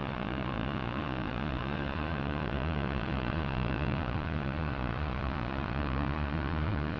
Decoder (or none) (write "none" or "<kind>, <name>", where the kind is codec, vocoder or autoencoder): vocoder, Vocos